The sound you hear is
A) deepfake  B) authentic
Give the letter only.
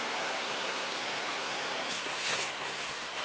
A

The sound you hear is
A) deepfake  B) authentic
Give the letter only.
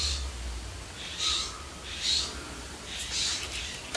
B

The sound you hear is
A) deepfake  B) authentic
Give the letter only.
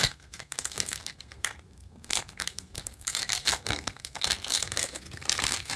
A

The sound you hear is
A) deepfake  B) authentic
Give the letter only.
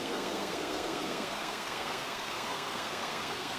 A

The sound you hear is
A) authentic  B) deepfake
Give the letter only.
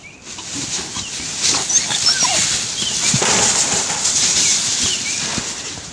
A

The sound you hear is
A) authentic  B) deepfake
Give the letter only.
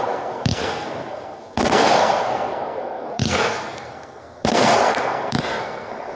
B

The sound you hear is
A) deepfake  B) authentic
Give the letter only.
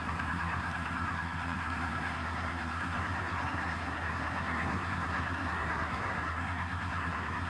A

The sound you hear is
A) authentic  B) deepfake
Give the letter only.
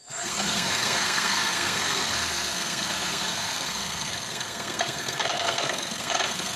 B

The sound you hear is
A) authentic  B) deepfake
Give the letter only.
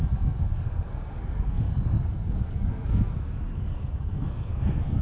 B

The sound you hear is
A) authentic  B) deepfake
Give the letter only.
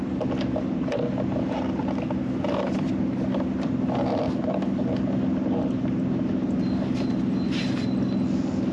A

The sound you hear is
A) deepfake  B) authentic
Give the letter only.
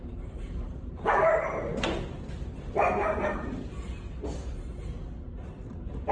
B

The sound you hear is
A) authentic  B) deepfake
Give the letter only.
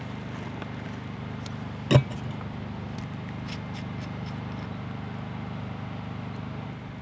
A